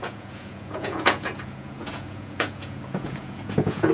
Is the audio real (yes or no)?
no